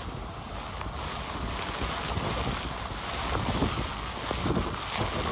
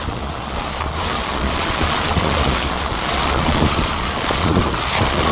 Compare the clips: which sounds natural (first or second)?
first